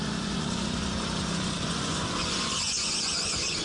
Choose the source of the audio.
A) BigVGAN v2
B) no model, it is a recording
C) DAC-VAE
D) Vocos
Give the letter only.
D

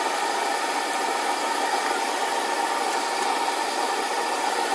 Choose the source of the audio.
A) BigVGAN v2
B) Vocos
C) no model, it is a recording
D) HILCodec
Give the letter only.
C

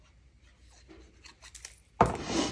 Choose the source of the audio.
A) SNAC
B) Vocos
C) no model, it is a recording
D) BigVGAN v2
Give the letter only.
C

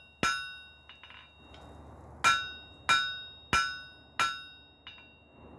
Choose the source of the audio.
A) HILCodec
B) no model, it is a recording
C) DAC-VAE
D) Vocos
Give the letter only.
B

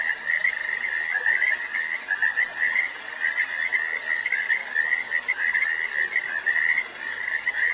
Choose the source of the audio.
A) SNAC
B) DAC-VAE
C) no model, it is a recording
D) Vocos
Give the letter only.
C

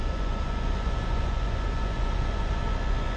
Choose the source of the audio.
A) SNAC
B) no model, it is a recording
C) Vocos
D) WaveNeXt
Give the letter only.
C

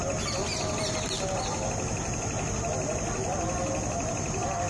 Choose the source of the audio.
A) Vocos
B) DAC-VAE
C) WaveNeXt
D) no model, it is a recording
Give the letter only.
D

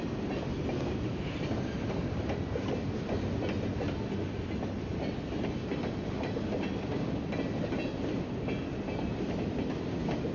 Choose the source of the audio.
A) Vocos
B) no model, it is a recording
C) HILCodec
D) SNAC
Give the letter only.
B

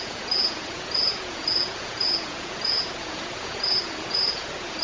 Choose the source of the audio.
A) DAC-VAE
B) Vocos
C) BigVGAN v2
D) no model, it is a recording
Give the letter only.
B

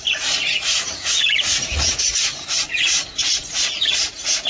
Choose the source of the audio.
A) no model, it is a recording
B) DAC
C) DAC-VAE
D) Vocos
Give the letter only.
D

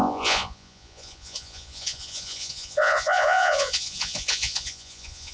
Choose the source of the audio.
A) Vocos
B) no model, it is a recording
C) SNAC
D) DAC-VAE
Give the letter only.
A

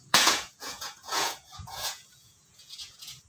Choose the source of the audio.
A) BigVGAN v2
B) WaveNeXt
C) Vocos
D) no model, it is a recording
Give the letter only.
C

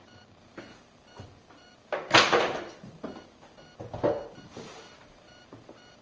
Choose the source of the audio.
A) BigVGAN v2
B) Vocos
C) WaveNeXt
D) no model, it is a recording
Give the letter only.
D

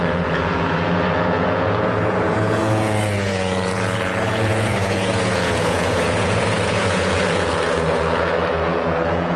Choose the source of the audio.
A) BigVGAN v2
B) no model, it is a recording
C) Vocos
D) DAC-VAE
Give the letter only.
C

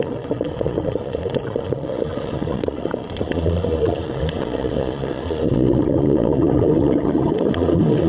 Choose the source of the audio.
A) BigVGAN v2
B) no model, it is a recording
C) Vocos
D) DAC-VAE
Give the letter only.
C